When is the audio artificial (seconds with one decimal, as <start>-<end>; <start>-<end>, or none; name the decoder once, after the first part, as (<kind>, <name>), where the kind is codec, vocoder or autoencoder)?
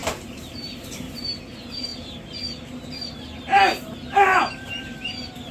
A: 0.0-1.4 (vocoder, BigVGAN v2); 4.3-5.5